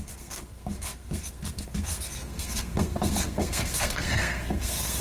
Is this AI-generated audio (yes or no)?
yes